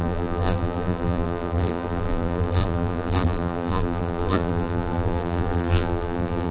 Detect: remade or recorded remade